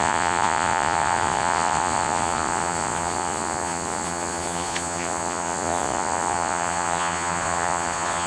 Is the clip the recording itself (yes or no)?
no